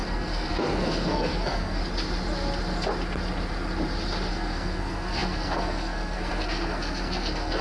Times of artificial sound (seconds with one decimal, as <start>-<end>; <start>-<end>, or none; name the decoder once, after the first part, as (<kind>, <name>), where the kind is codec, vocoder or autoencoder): 0.0-1.8 (codec, SNAC); 4.3-7.6